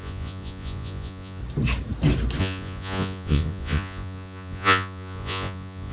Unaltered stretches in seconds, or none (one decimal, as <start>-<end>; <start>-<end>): 1.4-2.4